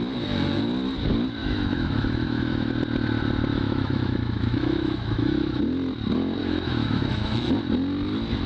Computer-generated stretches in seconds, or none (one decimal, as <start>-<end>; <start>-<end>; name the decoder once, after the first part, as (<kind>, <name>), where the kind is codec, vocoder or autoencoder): 1.4-2.7 (autoencoder, DAC-VAE); 3.5-5.6; 6.4-7.5